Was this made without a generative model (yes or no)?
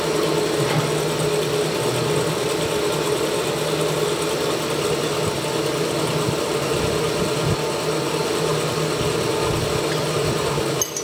yes